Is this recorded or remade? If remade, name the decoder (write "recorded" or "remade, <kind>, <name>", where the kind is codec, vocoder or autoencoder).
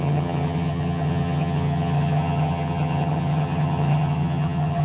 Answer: remade, vocoder, HiFi-GAN